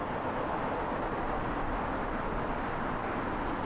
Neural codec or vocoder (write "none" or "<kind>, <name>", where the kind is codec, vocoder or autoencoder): none